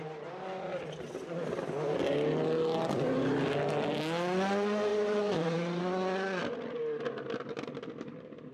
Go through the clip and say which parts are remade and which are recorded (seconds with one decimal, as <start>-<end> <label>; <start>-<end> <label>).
0.0-4.9 recorded; 4.9-5.8 remade; 5.8-8.5 recorded